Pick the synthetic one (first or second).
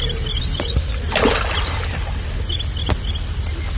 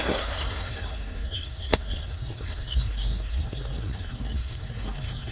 second